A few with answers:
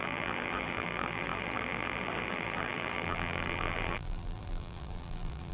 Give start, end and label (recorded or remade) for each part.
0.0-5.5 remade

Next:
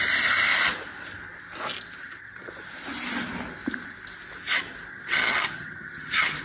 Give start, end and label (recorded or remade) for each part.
0.0-2.0 recorded; 2.0-2.5 remade; 2.5-4.9 recorded; 4.9-6.4 remade

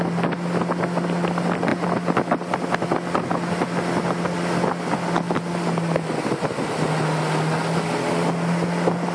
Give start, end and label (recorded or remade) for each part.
0.0-9.1 recorded

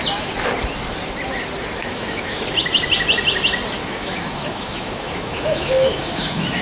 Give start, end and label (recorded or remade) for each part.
0.0-1.8 recorded; 1.8-2.4 remade; 2.4-3.8 recorded; 3.8-6.6 remade

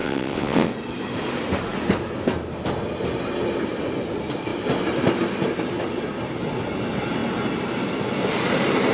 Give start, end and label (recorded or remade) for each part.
0.0-0.7 remade; 0.7-8.9 recorded

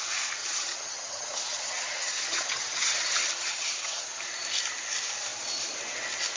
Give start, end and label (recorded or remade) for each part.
0.0-0.4 recorded; 0.4-4.2 remade; 4.2-6.4 recorded

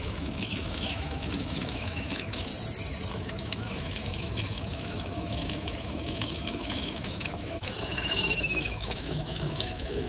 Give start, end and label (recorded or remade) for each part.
0.0-2.5 remade; 2.5-3.1 recorded; 3.1-10.1 remade

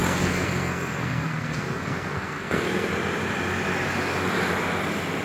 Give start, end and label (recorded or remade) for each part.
0.0-2.9 remade; 2.9-5.2 recorded